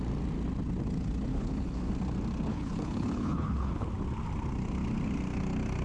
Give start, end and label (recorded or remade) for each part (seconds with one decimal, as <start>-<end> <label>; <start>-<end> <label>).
0.0-1.3 recorded; 1.3-1.9 remade; 1.9-2.5 recorded; 2.5-3.9 remade; 3.9-5.8 recorded